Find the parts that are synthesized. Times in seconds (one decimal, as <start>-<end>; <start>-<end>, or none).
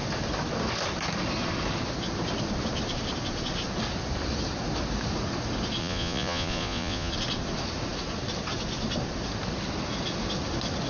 5.8-7.1